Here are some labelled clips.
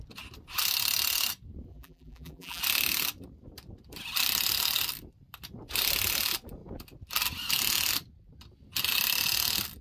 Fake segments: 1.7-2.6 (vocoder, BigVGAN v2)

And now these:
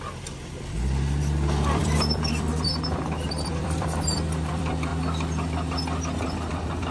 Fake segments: 0.0-4.9 (vocoder, BigVGAN v2); 6.5-6.9

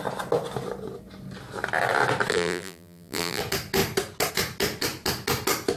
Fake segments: 2.3-3.4 (vocoder, BigVGAN v2)

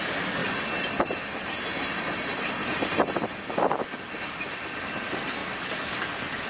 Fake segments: none

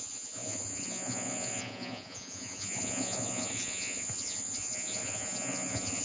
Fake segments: 0.0-6.0 (vocoder, Vocos)

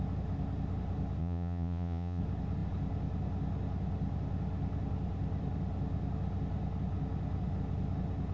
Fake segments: 1.2-2.2 (vocoder, Vocos)

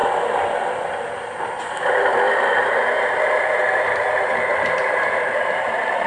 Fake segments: 2.6-6.1 (vocoder, BigVGAN v2)